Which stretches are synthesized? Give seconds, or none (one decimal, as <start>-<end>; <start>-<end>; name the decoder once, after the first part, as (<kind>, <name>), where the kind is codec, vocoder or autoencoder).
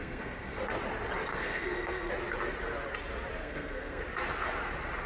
0.0-0.6 (codec, SNAC); 1.3-2.1; 3.4-4.0